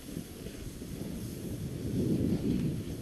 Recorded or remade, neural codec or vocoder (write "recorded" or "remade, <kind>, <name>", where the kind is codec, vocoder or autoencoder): recorded